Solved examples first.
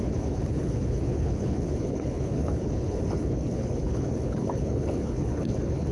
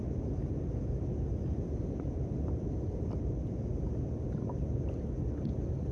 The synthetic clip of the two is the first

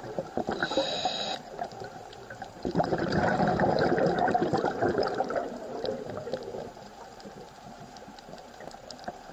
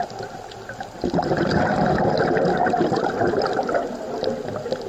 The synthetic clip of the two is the first